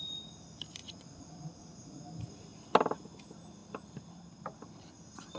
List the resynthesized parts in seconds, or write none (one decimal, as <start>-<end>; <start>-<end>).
0.8-2.0